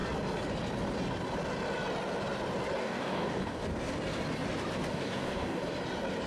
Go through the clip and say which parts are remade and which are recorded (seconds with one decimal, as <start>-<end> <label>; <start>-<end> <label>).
0.0-2.8 recorded; 2.8-3.6 remade; 3.6-4.9 recorded; 4.9-5.6 remade; 5.6-6.3 recorded